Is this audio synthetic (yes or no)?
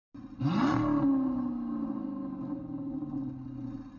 no